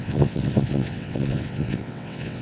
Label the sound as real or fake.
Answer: fake